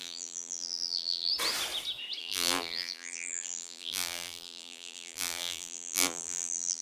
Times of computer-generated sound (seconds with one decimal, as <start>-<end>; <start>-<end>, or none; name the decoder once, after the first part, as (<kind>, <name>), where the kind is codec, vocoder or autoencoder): 0.0-1.3 (vocoder, BigVGAN v2); 2.2-6.8